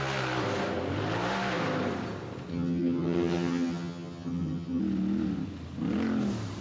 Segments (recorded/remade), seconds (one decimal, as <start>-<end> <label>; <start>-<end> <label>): 0.0-2.5 recorded; 2.5-4.8 remade; 4.8-6.6 recorded